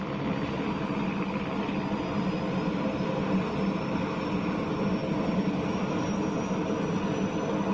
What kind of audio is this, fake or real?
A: real